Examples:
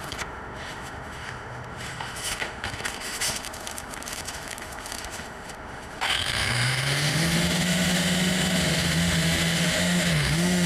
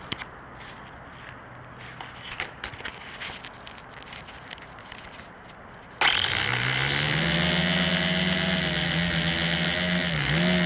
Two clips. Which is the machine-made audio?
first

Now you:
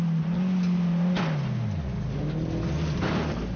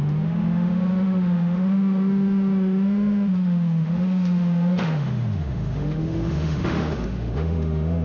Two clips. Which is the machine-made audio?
second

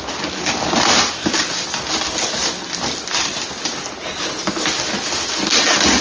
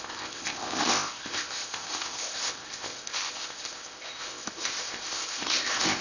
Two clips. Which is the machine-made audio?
second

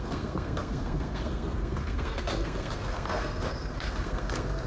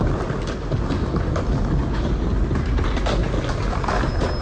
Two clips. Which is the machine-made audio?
first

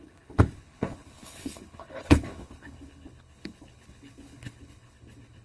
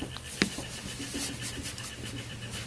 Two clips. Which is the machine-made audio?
first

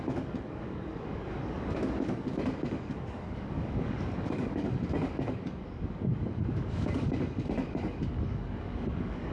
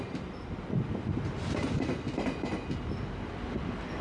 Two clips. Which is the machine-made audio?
first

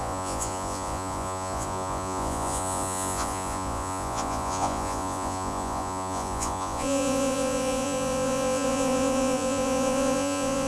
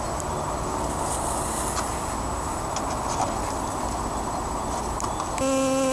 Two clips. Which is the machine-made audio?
first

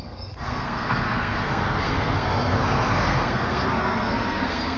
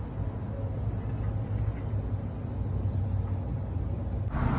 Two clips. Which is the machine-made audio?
first